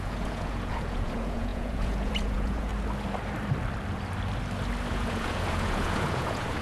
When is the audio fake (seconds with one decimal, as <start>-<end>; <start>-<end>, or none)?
0.0-2.7; 4.9-6.6